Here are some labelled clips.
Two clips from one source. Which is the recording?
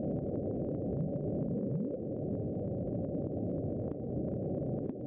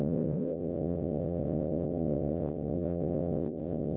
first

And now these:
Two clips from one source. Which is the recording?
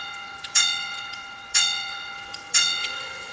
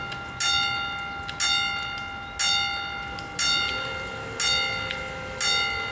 second